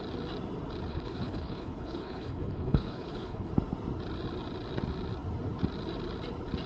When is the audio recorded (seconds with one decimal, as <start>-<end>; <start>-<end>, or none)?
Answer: 0.0-0.9; 3.5-6.7

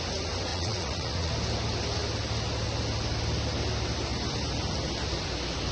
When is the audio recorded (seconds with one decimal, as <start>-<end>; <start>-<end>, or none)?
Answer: 0.0-0.5; 1.3-5.7

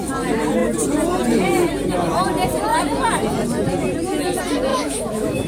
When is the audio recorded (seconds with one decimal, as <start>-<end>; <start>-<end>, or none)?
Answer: 0.0-4.7

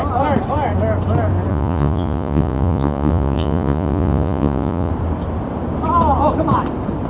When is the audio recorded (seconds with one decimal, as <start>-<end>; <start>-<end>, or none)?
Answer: 0.0-1.5; 4.9-7.1

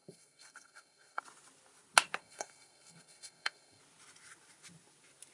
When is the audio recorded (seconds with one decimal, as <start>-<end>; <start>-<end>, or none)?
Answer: 1.2-2.2; 3.8-5.3

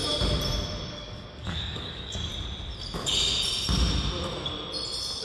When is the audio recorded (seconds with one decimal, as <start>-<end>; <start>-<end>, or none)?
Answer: 0.0-0.9; 2.3-5.2